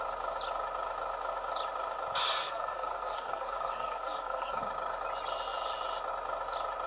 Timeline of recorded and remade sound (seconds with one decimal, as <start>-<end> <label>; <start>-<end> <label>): 0.0-2.4 recorded; 2.4-4.6 remade; 4.6-6.9 recorded